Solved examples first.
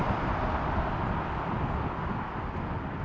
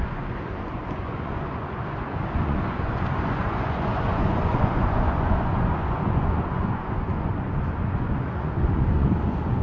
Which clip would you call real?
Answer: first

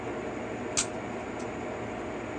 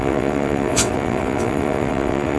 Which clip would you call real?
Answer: first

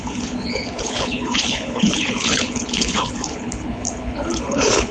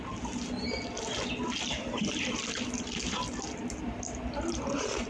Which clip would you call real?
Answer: second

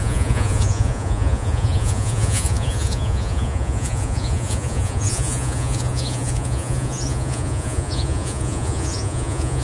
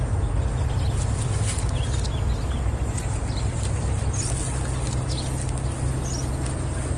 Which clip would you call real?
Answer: second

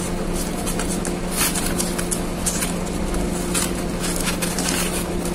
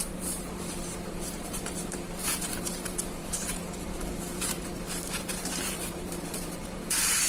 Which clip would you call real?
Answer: first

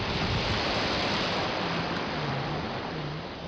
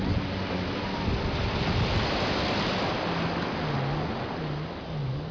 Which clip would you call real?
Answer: second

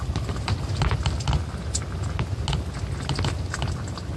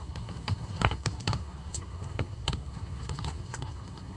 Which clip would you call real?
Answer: first